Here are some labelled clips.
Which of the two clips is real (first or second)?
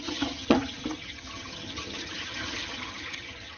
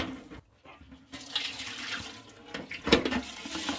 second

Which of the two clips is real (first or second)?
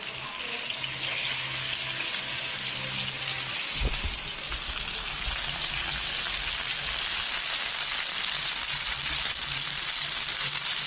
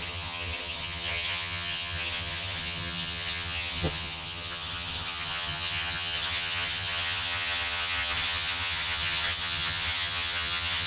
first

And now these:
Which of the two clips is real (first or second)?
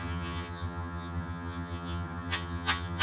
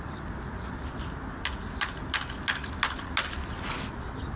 second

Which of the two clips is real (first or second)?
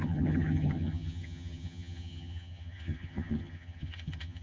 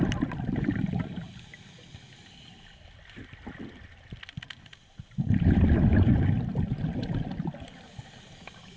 second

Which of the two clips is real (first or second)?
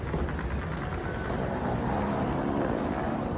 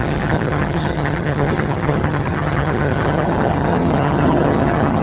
first